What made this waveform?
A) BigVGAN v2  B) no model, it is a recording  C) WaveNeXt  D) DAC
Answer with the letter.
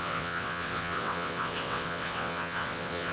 C